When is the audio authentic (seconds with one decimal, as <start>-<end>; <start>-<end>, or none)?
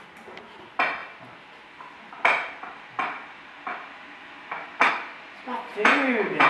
0.0-5.7